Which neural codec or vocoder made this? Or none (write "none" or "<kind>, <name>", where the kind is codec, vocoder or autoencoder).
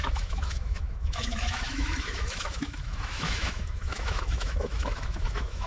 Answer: autoencoder, DAC-VAE